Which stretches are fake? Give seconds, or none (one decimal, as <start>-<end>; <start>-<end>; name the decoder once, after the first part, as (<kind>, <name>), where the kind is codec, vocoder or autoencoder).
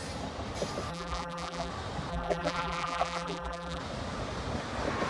0.9-1.7 (vocoder, BigVGAN v2); 2.1-3.8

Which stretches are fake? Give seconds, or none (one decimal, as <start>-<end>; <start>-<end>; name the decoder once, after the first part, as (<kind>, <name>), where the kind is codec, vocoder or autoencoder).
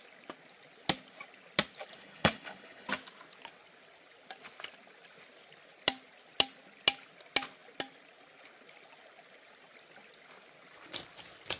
1.9-2.9 (codec, HILCodec)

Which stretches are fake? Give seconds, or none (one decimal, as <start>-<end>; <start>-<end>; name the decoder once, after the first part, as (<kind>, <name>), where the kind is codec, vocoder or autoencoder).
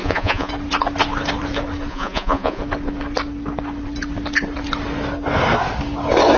0.0-0.5 (vocoder, Vocos); 1.9-2.6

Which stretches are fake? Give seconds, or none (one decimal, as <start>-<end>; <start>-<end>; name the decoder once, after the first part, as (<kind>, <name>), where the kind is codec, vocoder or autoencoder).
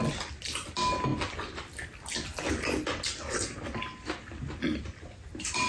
none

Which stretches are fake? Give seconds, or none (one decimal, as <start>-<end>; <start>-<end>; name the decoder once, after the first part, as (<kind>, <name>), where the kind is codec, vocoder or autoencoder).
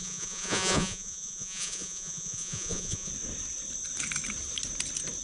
0.0-3.1 (vocoder, Vocos)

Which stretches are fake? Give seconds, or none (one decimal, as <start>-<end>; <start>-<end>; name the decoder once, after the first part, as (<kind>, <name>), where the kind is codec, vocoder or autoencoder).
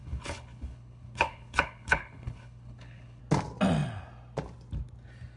0.0-3.2 (codec, HILCodec)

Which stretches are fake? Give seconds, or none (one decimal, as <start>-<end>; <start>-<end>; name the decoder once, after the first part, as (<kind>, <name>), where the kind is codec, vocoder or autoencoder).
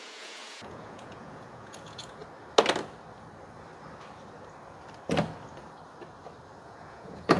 0.0-2.2 (vocoder, Vocos); 6.6-7.4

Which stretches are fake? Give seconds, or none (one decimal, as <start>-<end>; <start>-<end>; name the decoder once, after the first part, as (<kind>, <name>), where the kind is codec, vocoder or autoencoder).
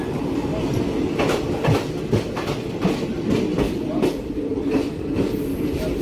none